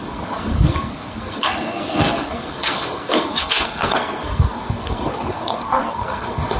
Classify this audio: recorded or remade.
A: remade